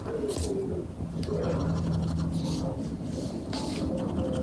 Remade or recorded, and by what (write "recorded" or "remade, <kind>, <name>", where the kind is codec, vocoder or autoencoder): recorded